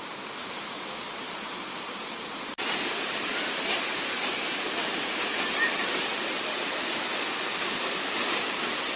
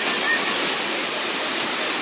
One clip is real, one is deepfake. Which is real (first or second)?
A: second